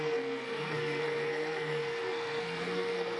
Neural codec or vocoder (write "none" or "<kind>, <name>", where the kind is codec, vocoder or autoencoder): codec, SNAC